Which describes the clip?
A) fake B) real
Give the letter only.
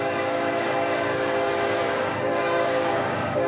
A